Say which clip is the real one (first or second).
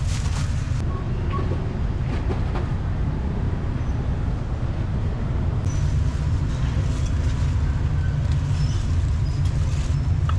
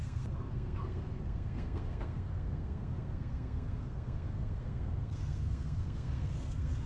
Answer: first